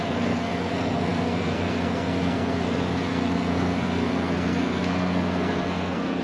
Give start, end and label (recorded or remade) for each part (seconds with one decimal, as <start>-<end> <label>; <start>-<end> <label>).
0.0-6.2 remade